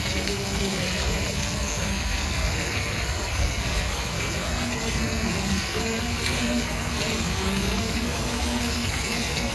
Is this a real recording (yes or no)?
no